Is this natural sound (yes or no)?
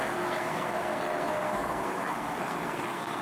no